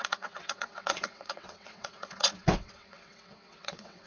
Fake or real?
fake